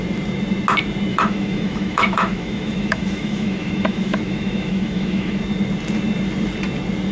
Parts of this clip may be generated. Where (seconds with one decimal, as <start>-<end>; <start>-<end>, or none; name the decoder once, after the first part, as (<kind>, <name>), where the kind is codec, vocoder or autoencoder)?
1.1-5.4 (autoencoder, DAC-VAE)